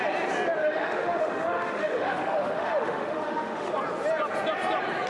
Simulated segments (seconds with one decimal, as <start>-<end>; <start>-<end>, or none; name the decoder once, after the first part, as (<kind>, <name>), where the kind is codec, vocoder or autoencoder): 0.6-3.7 (autoencoder, DAC-VAE)